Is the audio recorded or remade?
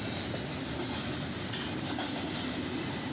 recorded